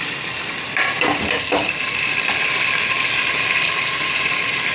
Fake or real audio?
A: real